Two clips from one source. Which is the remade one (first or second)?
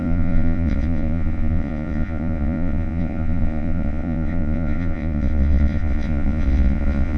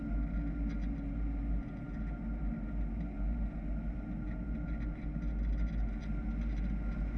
first